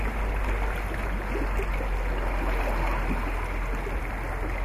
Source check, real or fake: real